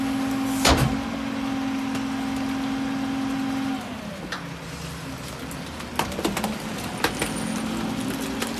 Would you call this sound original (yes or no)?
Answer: yes